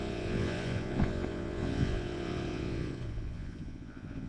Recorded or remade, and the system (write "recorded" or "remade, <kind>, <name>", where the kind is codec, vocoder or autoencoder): remade, vocoder, Vocos